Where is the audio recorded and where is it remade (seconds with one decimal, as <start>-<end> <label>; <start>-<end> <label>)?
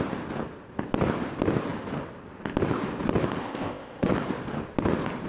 0.0-3.4 recorded; 3.4-4.1 remade; 4.1-5.3 recorded